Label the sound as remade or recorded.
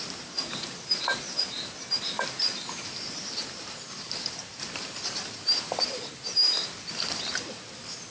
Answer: remade